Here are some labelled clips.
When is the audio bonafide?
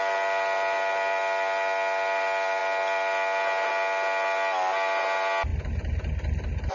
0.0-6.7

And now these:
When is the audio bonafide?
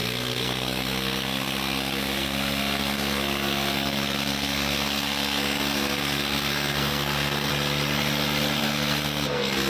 7.5-8.6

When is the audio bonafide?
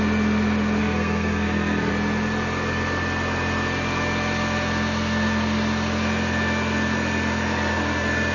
0.0-0.8; 1.9-8.3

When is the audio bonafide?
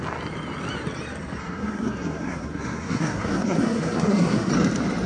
0.0-1.4; 4.5-5.1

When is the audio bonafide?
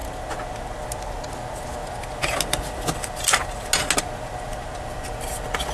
0.0-5.7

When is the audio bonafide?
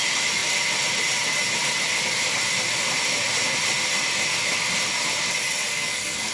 0.0-5.7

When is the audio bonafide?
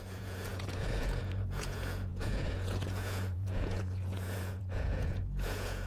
none